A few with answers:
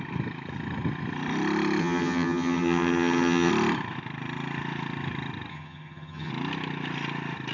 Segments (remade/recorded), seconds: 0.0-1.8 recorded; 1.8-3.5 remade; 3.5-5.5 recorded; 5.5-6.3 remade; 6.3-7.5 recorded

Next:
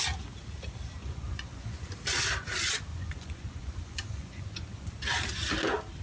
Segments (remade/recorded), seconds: 0.0-1.0 recorded; 1.0-1.9 remade; 1.9-2.9 recorded; 2.9-4.9 remade; 4.9-6.0 recorded

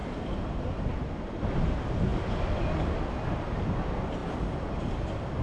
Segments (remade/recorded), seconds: 0.0-5.4 recorded

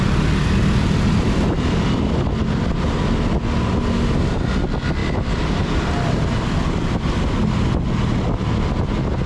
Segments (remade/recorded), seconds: 0.0-9.3 recorded

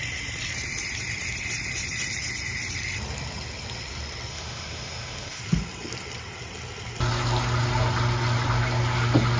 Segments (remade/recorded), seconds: 0.0-4.3 recorded; 4.3-5.4 remade; 5.4-9.4 recorded

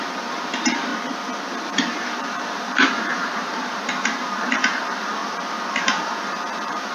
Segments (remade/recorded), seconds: 0.0-0.9 remade; 0.9-1.5 recorded; 1.5-5.2 remade; 5.2-5.7 recorded; 5.7-6.9 remade

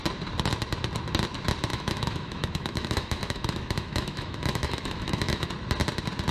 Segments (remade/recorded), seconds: 0.0-1.7 recorded; 1.7-5.5 remade; 5.5-6.3 recorded

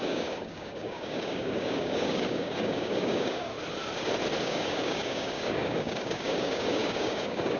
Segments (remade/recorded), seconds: 0.0-3.5 remade; 3.5-4.4 recorded; 4.4-7.6 remade